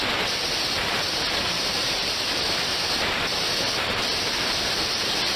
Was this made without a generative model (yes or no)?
no